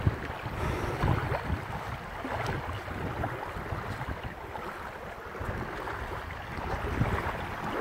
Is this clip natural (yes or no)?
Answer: yes